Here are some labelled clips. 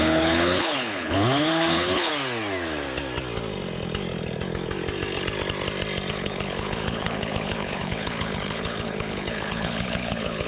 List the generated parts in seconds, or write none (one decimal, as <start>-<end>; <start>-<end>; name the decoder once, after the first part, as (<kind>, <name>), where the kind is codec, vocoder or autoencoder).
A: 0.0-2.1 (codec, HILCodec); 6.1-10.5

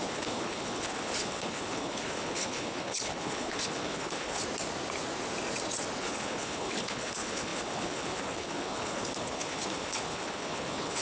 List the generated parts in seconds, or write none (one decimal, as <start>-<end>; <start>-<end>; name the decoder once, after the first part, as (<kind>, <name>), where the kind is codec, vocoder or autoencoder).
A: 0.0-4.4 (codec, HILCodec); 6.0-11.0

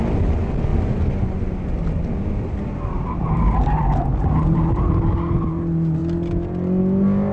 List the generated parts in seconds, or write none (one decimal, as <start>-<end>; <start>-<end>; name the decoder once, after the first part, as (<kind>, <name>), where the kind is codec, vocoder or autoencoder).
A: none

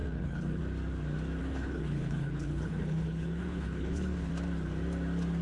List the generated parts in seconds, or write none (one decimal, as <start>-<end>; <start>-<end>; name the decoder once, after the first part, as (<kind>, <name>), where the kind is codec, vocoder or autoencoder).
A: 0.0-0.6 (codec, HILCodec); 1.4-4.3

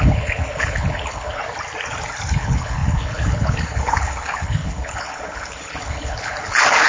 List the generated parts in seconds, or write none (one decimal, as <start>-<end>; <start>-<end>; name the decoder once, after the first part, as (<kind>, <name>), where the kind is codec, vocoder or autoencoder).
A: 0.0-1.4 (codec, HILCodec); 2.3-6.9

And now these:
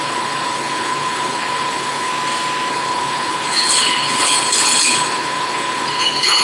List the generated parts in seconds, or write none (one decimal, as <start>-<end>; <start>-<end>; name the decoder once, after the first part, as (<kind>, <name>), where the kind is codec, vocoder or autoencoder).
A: 0.0-2.1 (codec, HILCodec); 2.7-6.4

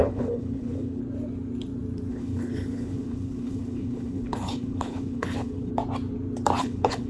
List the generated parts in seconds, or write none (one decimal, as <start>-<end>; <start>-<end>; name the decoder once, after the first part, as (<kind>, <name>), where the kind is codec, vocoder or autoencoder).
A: 0.0-1.0 (codec, HILCodec); 2.1-5.7; 6.6-7.1

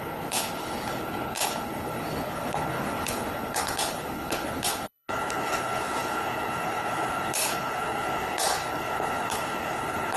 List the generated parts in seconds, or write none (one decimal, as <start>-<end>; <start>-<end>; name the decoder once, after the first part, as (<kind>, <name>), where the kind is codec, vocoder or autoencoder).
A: 0.0-10.2 (codec, HILCodec)